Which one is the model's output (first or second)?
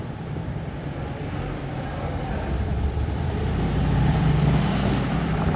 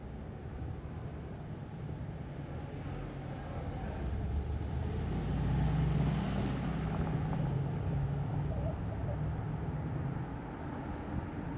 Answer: first